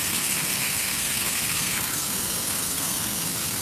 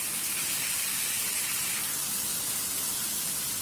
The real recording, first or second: second